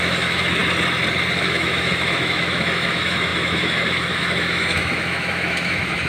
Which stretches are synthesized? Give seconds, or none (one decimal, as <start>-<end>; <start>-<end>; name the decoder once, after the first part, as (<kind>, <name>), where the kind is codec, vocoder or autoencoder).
0.0-0.6 (autoencoder, DAC-VAE); 1.4-6.1